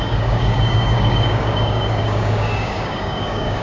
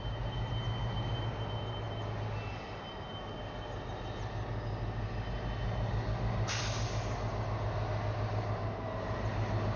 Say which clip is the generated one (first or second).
first